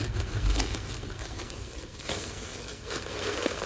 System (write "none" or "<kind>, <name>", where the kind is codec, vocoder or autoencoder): codec, SNAC